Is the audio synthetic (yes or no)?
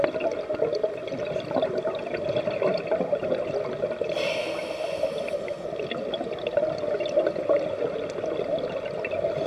no